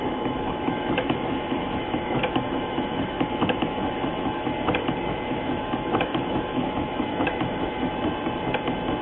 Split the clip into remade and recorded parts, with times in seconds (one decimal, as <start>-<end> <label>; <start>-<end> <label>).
0.0-7.9 remade; 7.9-9.0 recorded